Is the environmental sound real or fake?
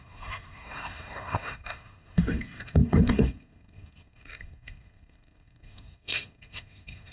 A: fake